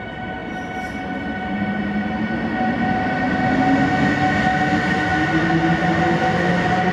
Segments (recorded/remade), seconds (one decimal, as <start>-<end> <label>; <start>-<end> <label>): 0.0-6.9 recorded